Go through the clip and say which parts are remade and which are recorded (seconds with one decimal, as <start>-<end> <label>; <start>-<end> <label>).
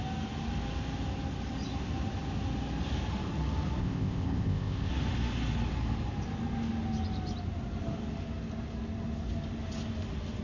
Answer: 0.0-3.8 recorded; 3.8-4.9 remade; 4.9-10.4 recorded